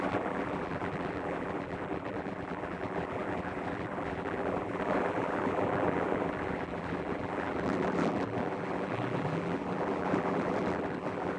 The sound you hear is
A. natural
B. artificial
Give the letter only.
B